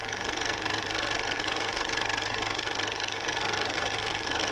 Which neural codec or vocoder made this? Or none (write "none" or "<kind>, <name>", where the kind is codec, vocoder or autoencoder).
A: codec, SNAC